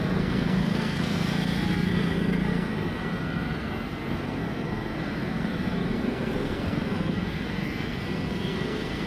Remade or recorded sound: remade